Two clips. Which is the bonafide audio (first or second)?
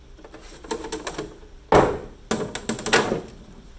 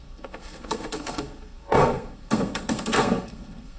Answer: first